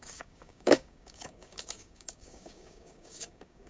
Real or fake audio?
fake